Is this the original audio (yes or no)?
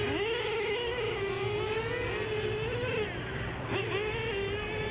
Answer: yes